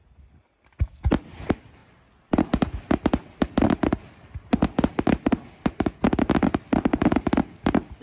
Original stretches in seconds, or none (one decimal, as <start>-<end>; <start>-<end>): 0.0-8.0

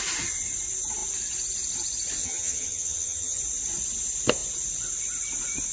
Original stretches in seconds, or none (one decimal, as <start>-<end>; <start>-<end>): 0.0-2.2; 3.4-5.7

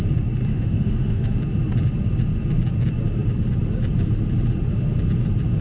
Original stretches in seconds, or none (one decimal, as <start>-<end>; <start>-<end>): 0.0-0.5; 1.4-5.6

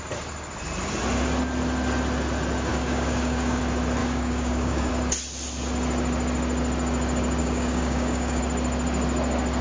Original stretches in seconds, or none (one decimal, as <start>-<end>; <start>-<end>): 0.0-2.7; 3.6-4.0; 4.9-7.4; 8.4-9.6

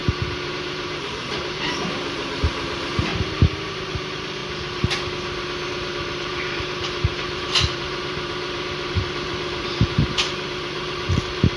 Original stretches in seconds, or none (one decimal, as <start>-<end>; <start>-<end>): 0.0-0.5; 4.4-5.7

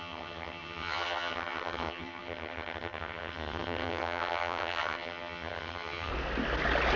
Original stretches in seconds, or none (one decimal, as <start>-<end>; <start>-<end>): 6.1-7.0